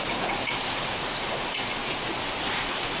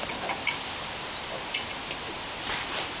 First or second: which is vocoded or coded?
first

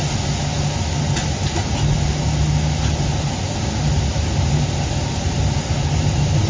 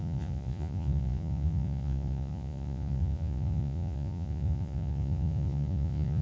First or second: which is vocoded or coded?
second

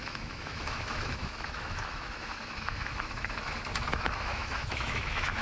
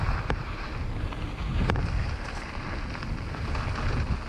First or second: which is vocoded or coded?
first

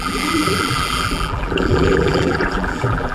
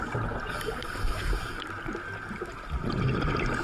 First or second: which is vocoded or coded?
first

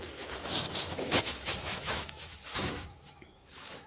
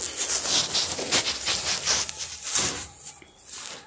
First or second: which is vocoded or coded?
first